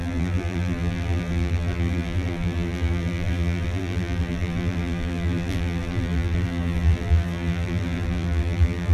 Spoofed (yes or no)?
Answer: yes